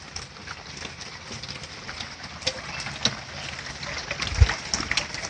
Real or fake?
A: real